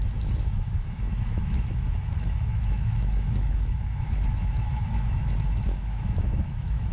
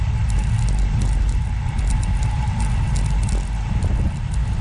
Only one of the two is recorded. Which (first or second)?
second